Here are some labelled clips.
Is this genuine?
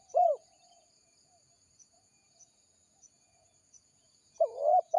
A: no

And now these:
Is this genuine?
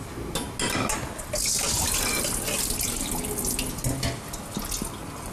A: yes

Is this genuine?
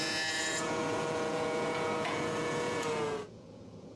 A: no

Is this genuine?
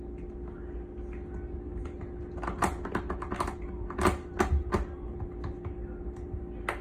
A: yes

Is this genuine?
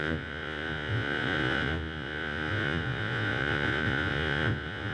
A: no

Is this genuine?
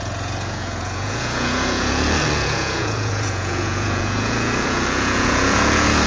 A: no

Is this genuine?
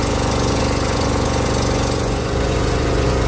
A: no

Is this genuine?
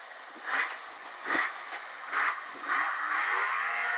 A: no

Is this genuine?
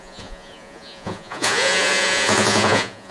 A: no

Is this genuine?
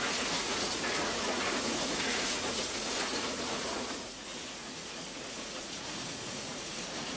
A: no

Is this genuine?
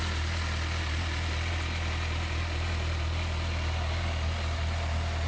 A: yes